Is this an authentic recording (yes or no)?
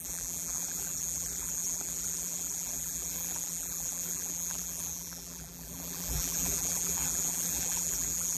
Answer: no